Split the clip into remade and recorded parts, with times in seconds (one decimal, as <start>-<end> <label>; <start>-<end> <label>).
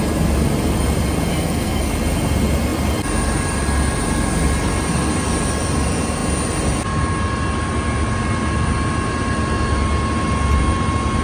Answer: 0.0-1.3 recorded; 1.3-1.9 remade; 1.9-11.2 recorded